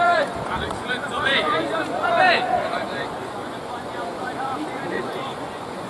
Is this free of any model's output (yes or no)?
no